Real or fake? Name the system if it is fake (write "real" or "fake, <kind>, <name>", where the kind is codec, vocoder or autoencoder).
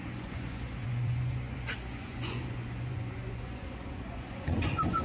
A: fake, vocoder, Vocos